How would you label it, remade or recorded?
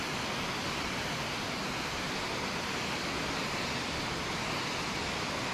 recorded